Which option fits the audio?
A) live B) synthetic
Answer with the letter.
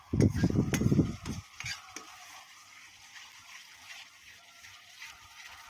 A